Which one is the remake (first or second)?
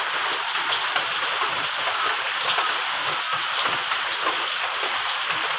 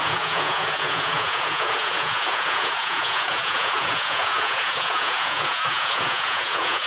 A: second